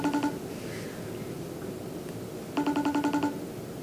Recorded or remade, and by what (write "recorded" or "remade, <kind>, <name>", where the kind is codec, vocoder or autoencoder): recorded